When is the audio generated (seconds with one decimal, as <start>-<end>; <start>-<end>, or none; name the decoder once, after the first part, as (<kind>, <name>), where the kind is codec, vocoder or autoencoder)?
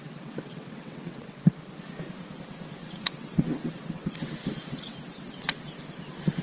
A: 0.0-1.5 (vocoder, WaveNeXt); 2.8-5.6